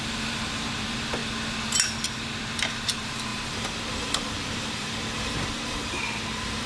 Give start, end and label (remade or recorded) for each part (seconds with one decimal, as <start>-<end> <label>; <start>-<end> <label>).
0.0-1.2 remade; 1.2-2.2 recorded; 2.2-6.7 remade